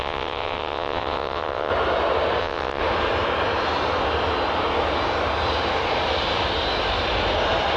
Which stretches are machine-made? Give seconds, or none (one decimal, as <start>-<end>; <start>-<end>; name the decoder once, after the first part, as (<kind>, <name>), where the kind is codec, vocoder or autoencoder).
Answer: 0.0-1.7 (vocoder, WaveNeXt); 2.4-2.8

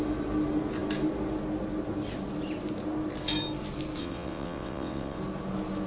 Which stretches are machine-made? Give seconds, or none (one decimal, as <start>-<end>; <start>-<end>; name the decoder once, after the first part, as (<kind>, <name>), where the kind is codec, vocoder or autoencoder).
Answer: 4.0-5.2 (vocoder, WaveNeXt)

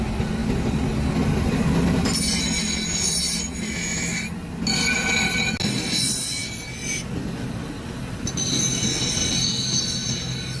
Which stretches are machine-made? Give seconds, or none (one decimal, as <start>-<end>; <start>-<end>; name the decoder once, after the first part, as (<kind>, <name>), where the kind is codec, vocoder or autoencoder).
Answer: none